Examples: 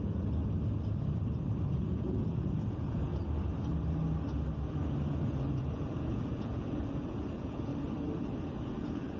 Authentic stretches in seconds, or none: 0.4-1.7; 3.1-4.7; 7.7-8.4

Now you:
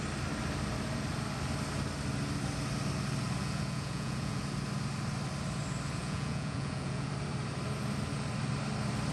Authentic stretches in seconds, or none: 0.0-3.4; 4.4-6.0; 7.1-9.1

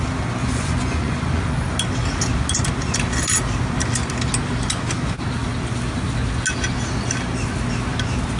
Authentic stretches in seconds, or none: 0.0-0.4; 1.4-8.4

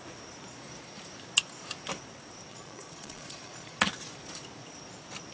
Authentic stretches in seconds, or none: 0.0-2.5; 3.9-5.3